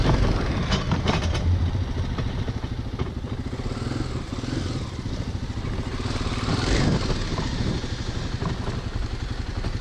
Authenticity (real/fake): real